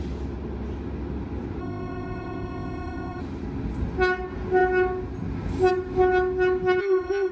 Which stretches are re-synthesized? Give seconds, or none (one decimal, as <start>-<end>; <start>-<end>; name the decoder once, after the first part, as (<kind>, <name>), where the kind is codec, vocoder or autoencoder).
1.6-3.2 (codec, ZipCodec); 6.8-7.3